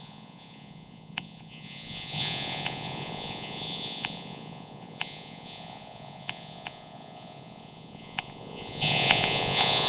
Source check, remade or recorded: remade